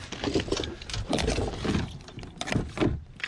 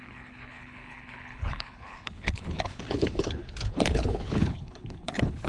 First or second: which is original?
first